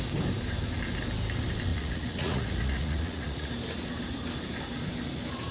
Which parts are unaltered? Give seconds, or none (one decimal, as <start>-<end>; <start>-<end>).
0.0-1.7; 3.5-5.5